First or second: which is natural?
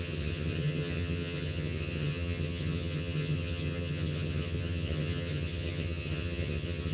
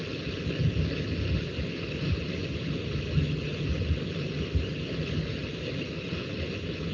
second